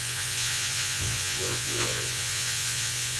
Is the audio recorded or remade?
remade